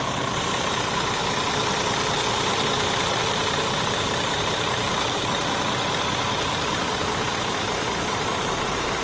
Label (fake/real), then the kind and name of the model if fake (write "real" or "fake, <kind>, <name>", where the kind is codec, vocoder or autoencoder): fake, vocoder, BigVGAN v2